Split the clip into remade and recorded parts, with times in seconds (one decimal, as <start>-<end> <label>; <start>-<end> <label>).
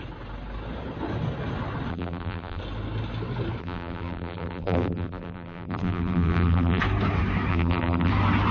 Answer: 0.0-1.9 recorded; 1.9-2.6 remade; 2.6-3.6 recorded; 3.6-6.8 remade; 6.8-7.5 recorded; 7.5-8.1 remade; 8.1-8.5 recorded